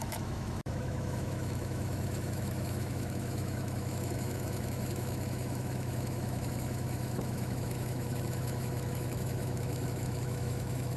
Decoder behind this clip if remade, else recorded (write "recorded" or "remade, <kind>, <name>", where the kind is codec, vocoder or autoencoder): remade, autoencoder, DAC-VAE